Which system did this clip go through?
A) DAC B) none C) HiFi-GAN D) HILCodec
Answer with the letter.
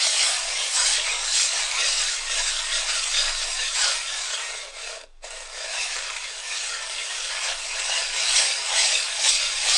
A